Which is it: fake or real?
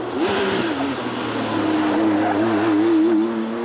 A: real